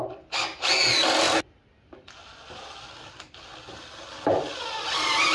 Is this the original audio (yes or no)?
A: yes